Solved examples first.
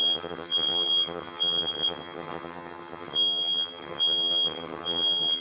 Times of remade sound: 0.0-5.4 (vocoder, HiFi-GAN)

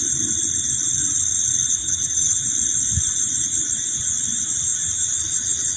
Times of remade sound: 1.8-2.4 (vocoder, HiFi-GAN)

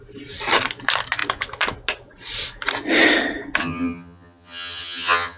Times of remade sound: 3.6-5.4 (vocoder, HiFi-GAN)

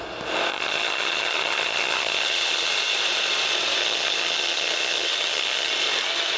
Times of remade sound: 0.5-2.7 (vocoder, HiFi-GAN); 3.8-5.7

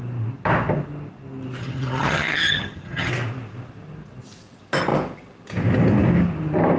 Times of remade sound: 1.6-3.1 (vocoder, HiFi-GAN)

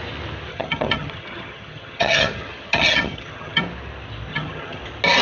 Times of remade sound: 0.5-3.6 (vocoder, HiFi-GAN); 4.3-4.8